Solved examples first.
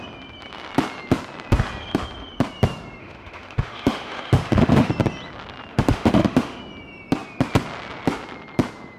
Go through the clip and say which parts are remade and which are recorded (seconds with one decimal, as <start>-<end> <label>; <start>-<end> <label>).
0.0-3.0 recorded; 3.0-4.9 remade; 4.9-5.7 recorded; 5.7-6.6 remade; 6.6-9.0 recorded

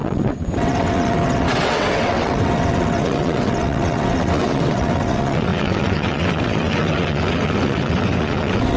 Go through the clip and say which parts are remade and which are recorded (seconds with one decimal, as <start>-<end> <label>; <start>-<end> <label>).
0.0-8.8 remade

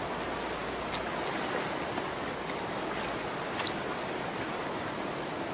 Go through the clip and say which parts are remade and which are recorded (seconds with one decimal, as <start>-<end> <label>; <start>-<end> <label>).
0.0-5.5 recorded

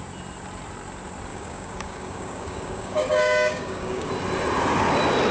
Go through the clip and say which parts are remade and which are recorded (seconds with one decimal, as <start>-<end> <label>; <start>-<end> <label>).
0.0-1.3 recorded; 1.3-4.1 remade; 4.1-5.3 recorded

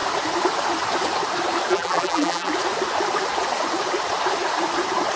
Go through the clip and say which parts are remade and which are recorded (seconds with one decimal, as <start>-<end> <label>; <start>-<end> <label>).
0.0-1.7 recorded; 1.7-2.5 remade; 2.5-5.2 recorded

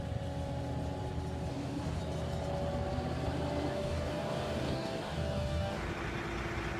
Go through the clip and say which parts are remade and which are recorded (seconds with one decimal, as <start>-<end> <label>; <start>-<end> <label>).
0.0-1.5 recorded; 1.5-2.0 remade; 2.0-3.7 recorded; 3.7-5.9 remade; 5.9-6.8 recorded

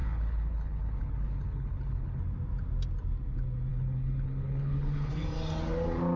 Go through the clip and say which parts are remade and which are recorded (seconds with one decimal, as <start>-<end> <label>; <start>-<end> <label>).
0.0-2.2 remade; 2.2-3.7 recorded; 3.7-5.1 remade; 5.1-6.2 recorded